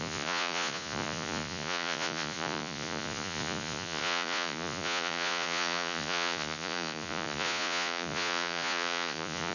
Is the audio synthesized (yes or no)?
yes